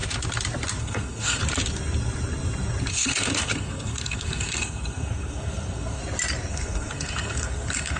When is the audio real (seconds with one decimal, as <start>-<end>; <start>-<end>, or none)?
0.0-0.8; 1.4-2.9; 6.0-6.5